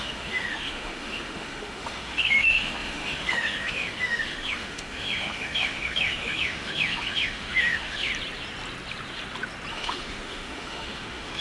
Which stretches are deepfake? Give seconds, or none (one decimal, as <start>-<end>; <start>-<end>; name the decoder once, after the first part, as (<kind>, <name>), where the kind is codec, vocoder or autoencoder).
0.0-8.1 (autoencoder, DAC-VAE); 9.7-11.4